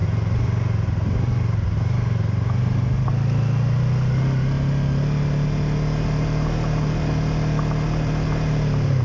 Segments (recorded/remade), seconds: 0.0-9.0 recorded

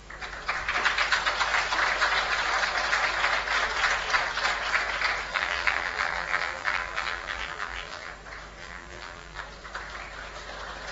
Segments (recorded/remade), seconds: 0.0-5.3 recorded; 5.3-8.1 remade; 8.1-8.6 recorded; 8.6-9.4 remade; 9.4-10.9 recorded

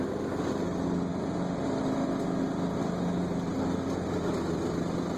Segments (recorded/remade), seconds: 0.0-5.2 recorded

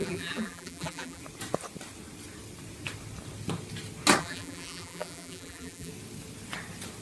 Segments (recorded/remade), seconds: 0.0-1.2 remade; 1.2-4.2 recorded; 4.2-5.9 remade; 5.9-7.0 recorded

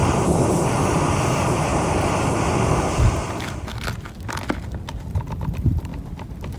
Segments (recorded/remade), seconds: 0.0-0.5 recorded; 0.5-1.7 remade; 1.7-5.3 recorded; 5.3-5.9 remade; 5.9-6.6 recorded